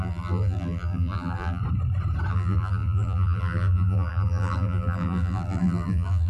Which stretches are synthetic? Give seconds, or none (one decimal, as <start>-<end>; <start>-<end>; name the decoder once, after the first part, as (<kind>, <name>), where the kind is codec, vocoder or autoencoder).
0.0-1.6 (vocoder, BigVGAN v2); 2.3-6.3

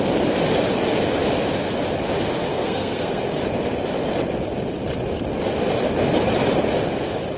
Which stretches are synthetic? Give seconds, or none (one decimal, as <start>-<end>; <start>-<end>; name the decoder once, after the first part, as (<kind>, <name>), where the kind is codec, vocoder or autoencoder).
2.5-3.2 (codec, SNAC)

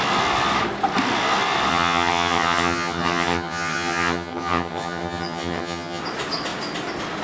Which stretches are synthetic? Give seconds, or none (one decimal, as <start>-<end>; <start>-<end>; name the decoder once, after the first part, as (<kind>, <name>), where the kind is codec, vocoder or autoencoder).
1.7-6.0 (vocoder, HiFi-GAN)

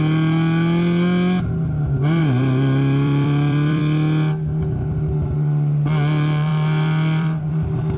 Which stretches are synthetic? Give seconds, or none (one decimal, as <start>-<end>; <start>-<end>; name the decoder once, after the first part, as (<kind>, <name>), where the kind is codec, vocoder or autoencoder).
2.2-3.8 (vocoder, BigVGAN v2); 6.5-7.5

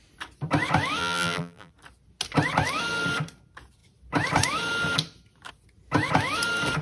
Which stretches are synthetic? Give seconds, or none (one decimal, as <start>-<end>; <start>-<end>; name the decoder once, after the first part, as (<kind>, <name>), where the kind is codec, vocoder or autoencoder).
1.0-1.7 (vocoder, BigVGAN v2)

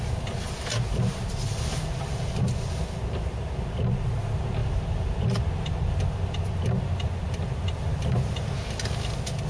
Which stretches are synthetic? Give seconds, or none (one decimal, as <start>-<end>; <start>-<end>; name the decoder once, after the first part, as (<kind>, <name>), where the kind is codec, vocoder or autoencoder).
none